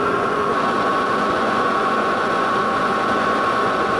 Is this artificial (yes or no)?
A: yes